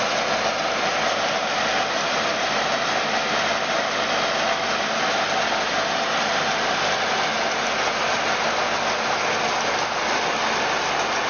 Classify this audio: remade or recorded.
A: recorded